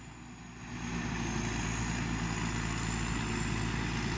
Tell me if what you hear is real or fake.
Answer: real